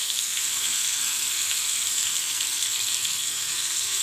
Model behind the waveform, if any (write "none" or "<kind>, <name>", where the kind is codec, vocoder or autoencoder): codec, SNAC